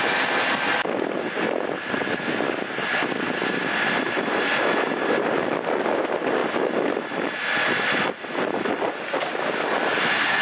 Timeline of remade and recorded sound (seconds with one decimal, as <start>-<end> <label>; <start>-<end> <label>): 0.0-10.4 recorded

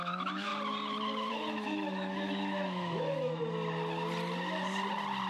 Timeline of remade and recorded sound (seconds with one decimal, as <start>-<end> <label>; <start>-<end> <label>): 0.0-0.5 remade; 0.5-1.3 recorded; 1.3-3.4 remade; 3.4-5.3 recorded